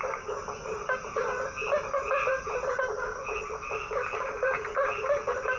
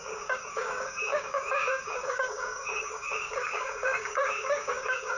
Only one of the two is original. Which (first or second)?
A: first